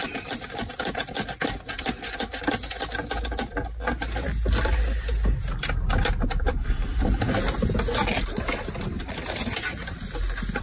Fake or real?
real